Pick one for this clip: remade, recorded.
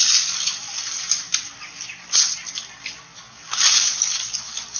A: remade